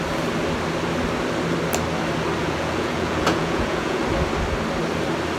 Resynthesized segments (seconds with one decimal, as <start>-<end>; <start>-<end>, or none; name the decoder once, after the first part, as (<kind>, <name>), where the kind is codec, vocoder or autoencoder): 2.4-4.0 (vocoder, Vocos)